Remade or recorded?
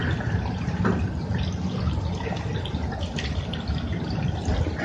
recorded